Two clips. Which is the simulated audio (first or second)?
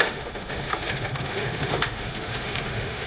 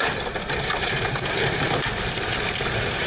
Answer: first